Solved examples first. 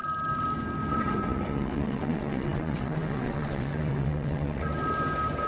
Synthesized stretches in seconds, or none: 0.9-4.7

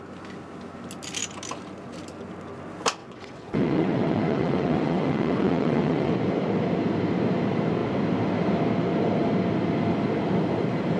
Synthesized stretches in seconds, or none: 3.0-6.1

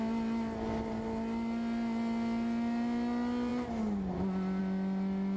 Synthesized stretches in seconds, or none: none